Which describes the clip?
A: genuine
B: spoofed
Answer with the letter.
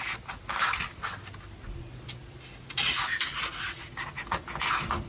A